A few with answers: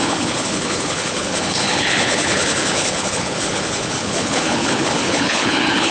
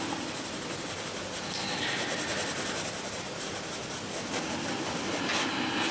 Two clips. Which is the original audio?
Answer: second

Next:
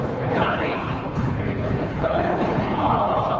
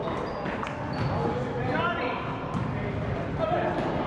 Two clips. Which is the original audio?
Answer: second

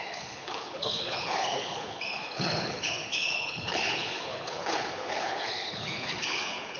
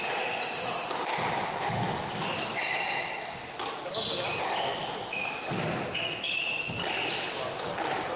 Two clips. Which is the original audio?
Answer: second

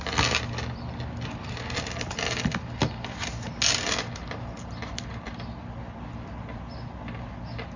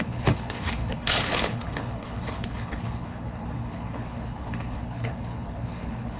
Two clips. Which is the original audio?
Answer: first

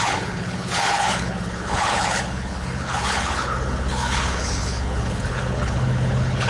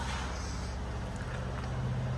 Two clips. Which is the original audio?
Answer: second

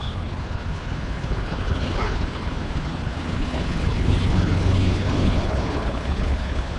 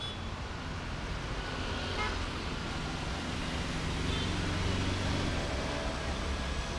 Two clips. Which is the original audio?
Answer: second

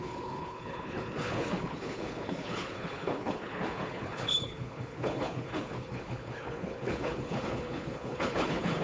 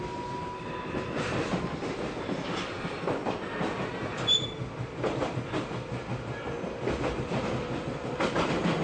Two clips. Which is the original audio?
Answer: second